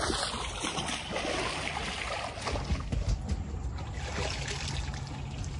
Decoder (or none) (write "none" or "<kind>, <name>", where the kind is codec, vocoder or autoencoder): none